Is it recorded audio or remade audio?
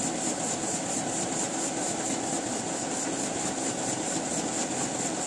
recorded